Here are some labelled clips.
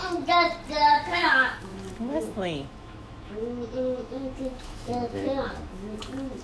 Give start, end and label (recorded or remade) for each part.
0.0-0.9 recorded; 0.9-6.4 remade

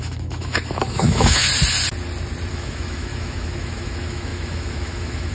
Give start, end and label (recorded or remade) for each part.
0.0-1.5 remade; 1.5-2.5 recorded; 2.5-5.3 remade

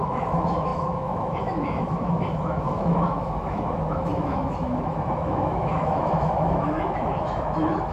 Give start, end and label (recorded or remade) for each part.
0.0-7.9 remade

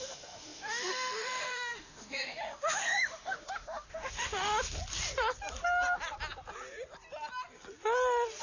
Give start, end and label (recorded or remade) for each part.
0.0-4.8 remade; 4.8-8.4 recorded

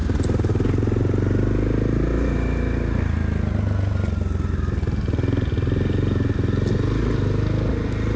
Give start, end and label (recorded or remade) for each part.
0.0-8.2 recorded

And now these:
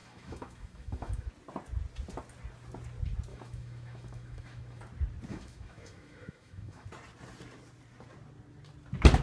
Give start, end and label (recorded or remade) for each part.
0.0-1.3 remade; 1.3-3.3 recorded; 3.3-4.8 remade; 4.8-5.3 recorded; 5.3-6.9 remade; 6.9-9.2 recorded

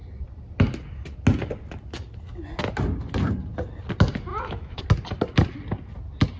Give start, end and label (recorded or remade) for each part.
0.0-4.3 recorded; 4.3-4.8 remade; 4.8-6.4 recorded